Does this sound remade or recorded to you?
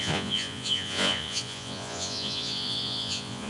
remade